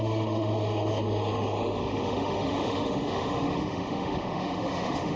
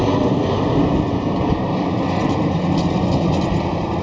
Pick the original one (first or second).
second